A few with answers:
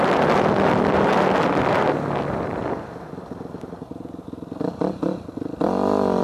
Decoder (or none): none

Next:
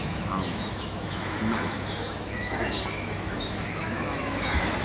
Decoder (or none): autoencoder, DAC-VAE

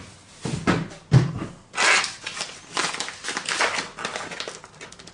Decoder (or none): none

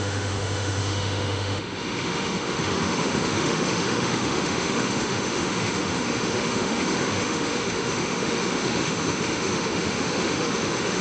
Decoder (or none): autoencoder, DAC-VAE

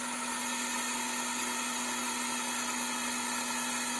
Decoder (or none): none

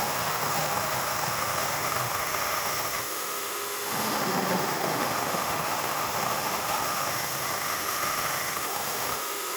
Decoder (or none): autoencoder, DAC-VAE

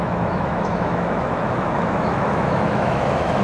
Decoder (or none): autoencoder, DAC-VAE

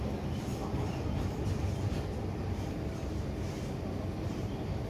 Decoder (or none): none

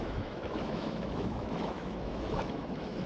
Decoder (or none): autoencoder, DAC-VAE